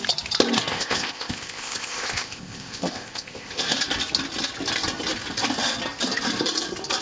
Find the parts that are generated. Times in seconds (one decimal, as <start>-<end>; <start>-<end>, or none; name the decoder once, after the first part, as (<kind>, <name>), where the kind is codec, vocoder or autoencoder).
0.7-3.6 (codec, ZipCodec)